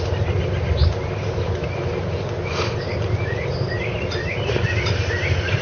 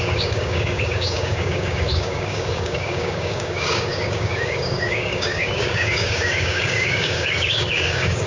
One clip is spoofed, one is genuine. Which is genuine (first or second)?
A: first